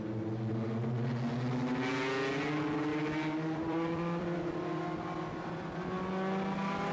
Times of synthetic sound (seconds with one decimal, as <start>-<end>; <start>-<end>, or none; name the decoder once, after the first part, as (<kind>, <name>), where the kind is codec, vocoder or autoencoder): 2.9-4.8 (vocoder, BigVGAN v2)